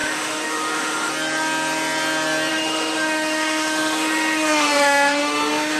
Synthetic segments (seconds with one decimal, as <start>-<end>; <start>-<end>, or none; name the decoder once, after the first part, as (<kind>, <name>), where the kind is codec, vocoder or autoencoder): 0.0-1.1 (autoencoder, DAC-VAE); 2.5-5.8